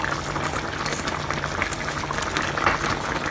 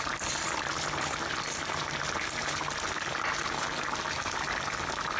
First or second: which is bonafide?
first